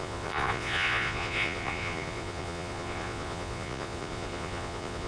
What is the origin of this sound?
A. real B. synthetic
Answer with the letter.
B